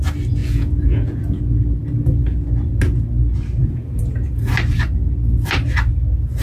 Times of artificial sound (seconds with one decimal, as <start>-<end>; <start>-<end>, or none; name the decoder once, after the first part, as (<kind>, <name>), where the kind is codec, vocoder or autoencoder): 0.4-1.4 (vocoder, Vocos); 3.6-4.5